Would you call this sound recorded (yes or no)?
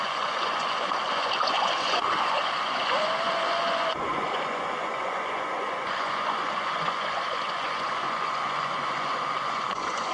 no